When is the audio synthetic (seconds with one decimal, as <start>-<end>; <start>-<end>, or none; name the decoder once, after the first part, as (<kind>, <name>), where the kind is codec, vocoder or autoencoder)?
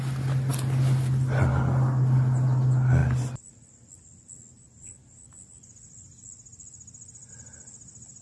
none